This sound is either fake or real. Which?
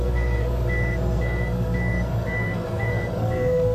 fake